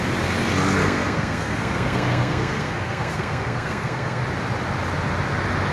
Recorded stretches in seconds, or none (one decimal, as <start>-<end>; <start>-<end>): 0.0-0.8; 4.2-5.7